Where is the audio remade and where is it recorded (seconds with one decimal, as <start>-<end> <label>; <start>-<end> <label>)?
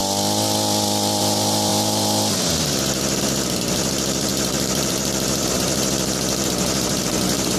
0.0-1.2 recorded; 1.2-7.6 remade